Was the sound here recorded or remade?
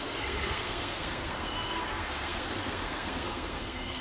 remade